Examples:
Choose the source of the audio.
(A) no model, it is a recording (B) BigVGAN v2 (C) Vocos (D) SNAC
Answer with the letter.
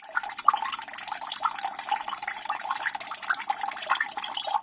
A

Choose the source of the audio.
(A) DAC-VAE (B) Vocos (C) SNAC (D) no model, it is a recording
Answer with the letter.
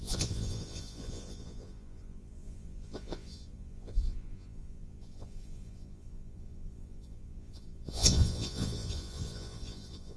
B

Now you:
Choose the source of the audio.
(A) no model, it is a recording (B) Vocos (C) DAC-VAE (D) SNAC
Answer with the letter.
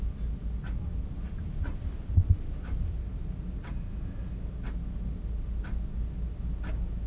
A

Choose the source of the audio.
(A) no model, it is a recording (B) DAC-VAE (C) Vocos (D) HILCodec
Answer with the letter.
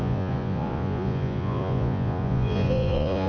C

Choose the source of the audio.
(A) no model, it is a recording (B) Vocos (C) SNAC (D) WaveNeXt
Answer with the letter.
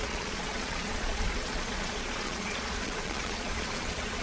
B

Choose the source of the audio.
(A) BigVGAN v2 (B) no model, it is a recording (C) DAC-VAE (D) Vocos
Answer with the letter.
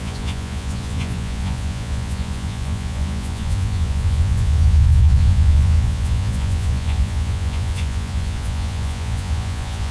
D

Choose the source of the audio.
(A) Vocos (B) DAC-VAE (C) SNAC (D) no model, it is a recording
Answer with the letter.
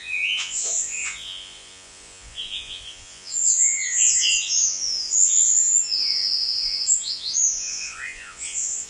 A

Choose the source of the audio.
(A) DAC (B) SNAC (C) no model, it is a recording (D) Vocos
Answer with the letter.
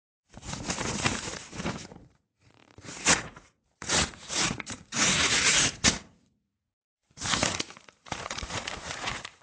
D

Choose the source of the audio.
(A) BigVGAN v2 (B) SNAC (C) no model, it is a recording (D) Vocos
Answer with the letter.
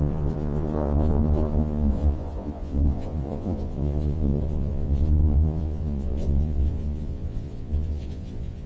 D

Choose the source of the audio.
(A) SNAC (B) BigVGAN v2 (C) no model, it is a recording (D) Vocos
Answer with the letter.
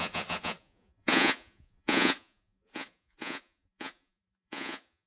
D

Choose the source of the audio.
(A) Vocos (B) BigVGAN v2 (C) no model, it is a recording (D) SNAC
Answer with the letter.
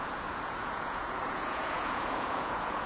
A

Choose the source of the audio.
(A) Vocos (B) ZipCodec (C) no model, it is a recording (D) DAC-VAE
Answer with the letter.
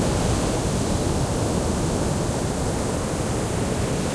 C